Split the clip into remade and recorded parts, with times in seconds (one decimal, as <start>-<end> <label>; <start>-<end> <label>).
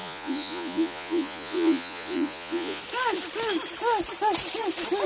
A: 0.0-2.8 remade; 2.8-5.1 recorded